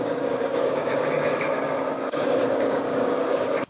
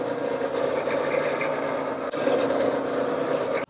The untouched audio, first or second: second